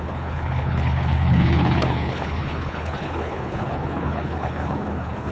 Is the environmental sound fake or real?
fake